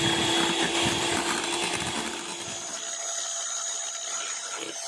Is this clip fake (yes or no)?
no